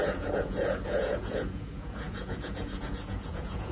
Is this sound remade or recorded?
remade